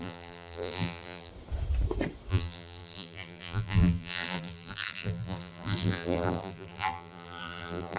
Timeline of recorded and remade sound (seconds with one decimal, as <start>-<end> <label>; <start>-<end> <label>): 0.0-1.3 remade; 1.3-2.3 recorded; 2.3-8.0 remade